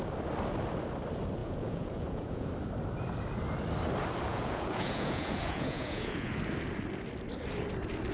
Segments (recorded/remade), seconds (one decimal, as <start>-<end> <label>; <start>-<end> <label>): 0.0-1.4 recorded; 1.4-2.5 remade; 2.5-4.3 recorded; 4.3-6.4 remade; 6.4-8.1 recorded